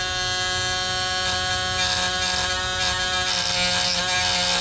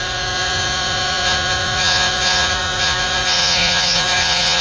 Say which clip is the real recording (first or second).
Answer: first